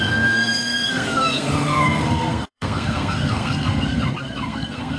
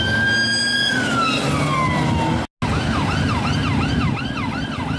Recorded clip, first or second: second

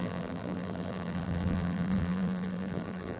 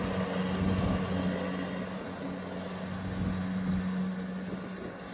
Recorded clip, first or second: second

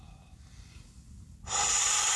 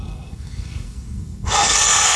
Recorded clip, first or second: first